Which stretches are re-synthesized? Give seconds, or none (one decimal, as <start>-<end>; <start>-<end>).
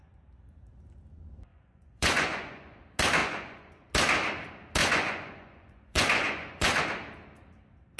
1.5-2.8; 3.2-3.9; 4.8-6.8